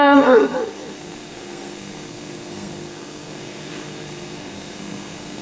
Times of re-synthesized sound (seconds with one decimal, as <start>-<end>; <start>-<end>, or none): 0.0-5.4

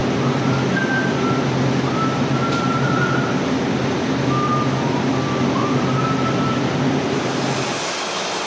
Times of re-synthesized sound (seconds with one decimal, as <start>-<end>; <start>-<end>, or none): none

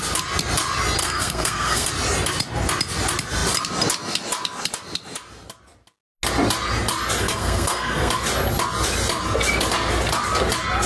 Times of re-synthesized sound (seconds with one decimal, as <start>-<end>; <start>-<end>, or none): 1.0-1.9; 7.2-8.1

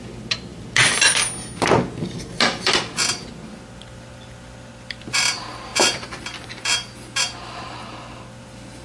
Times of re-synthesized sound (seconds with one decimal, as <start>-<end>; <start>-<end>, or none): none

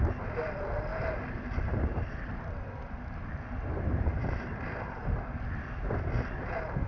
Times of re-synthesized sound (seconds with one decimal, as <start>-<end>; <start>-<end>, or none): none

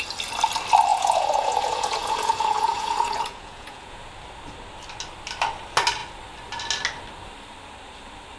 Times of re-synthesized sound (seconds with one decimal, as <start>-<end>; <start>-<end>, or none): 0.9-4.1

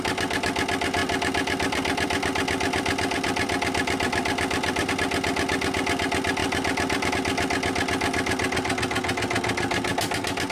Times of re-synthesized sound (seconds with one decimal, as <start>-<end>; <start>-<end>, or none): 1.0-4.9; 6.4-7.1